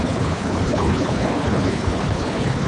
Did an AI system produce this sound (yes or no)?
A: yes